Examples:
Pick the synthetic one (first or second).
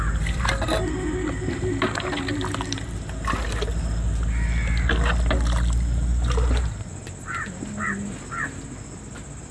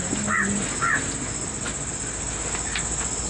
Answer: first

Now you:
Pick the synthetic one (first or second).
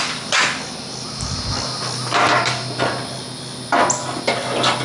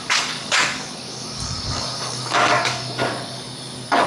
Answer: second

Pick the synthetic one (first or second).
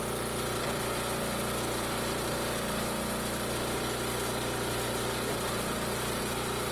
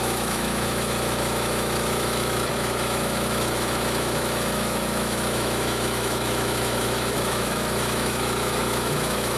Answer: second